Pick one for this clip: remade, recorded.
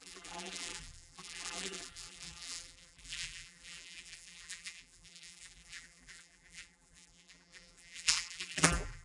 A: remade